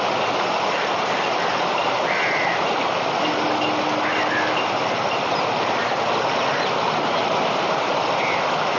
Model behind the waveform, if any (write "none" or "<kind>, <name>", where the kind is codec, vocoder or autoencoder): none